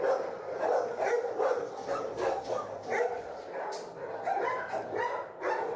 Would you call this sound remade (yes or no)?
yes